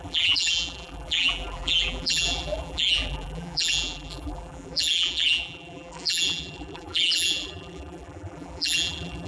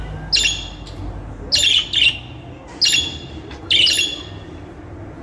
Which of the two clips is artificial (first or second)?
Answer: first